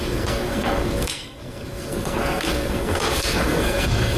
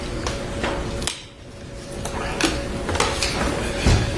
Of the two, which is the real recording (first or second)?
second